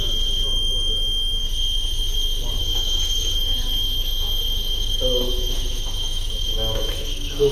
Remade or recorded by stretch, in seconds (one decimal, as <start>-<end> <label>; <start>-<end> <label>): 0.0-1.4 remade; 1.4-2.6 recorded; 2.6-7.5 remade